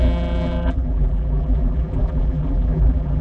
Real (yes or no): no